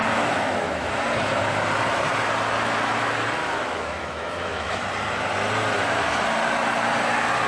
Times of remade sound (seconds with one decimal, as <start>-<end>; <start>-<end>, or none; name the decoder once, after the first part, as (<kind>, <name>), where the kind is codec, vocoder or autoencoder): 0.0-0.9 (autoencoder, DAC-VAE); 3.4-4.8